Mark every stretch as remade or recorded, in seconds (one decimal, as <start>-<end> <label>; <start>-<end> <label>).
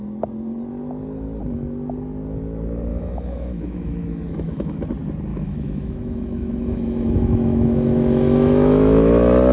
0.0-2.9 recorded; 2.9-4.8 remade; 4.8-5.3 recorded; 5.3-9.1 remade; 9.1-9.5 recorded